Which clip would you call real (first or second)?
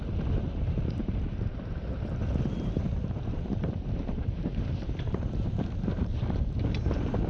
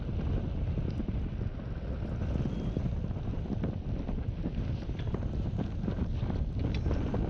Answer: second